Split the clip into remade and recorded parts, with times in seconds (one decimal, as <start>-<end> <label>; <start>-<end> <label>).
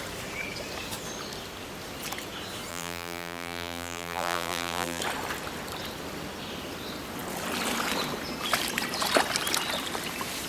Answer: 0.0-2.7 recorded; 2.7-5.0 remade; 5.0-10.5 recorded